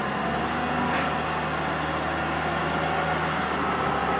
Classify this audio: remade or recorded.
recorded